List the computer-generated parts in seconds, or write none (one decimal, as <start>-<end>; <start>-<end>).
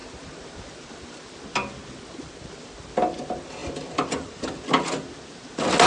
3.6-4.6